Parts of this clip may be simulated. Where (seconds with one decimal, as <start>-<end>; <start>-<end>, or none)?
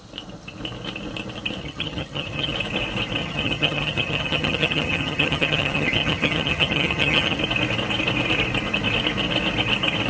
1.6-2.5; 3.2-7.4